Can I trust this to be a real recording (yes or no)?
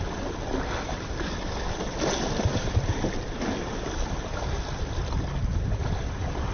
yes